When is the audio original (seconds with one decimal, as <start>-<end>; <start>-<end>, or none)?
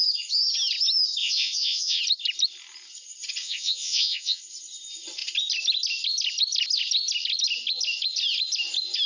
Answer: 0.0-1.2; 2.0-3.4; 4.4-9.1